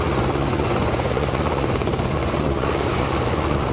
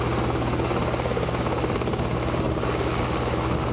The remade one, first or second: first